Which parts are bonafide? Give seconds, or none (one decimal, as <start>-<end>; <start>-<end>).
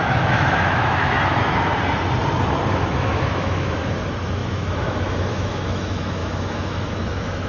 1.7-2.7